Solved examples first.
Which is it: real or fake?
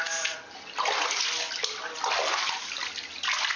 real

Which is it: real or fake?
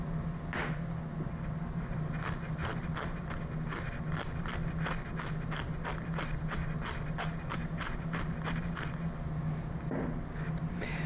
real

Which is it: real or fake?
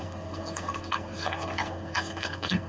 fake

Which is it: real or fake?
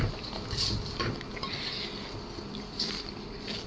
real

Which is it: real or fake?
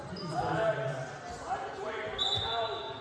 real